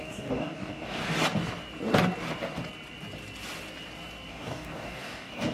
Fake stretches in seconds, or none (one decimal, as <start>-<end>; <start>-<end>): 0.0-1.0; 4.3-5.5